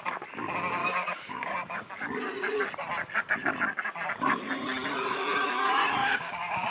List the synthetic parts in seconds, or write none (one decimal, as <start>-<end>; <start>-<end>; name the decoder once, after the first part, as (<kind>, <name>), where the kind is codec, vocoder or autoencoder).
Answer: 0.8-1.9 (codec, DAC); 6.0-6.7